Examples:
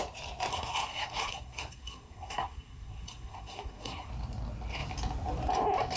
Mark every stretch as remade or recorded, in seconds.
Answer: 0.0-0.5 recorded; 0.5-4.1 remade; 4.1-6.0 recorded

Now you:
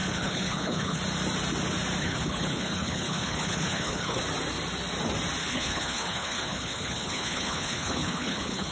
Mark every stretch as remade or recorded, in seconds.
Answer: 0.0-1.0 remade; 1.0-2.0 recorded; 2.0-4.2 remade; 4.2-5.4 recorded; 5.4-8.7 remade

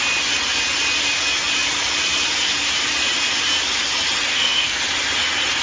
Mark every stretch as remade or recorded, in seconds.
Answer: 0.0-4.3 recorded; 4.3-4.8 remade; 4.8-5.6 recorded

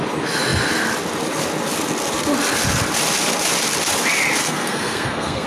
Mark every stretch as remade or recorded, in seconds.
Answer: 0.0-4.4 recorded; 4.4-5.5 remade

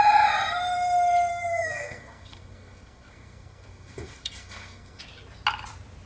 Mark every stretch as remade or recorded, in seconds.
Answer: 0.0-1.3 recorded; 1.3-5.0 remade; 5.0-6.1 recorded

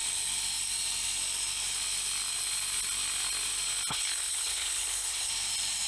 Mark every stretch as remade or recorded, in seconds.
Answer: 0.0-3.9 recorded; 3.9-5.3 remade; 5.3-5.9 recorded

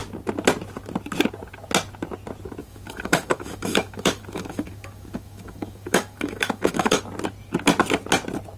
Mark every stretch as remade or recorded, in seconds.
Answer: 0.0-2.6 recorded; 2.6-7.0 remade; 7.0-8.6 recorded

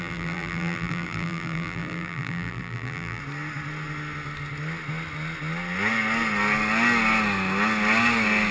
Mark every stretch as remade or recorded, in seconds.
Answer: 0.0-3.2 remade; 3.2-8.5 recorded